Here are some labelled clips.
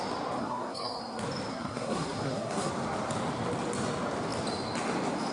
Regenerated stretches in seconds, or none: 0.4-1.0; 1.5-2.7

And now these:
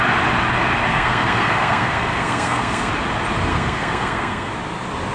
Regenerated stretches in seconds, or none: 0.9-2.9; 3.5-4.5

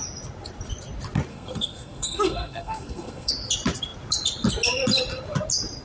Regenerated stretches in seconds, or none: 1.3-3.3

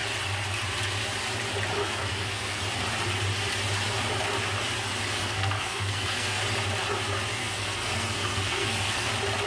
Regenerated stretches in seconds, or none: 1.8-2.6; 5.2-6.4; 7.4-9.1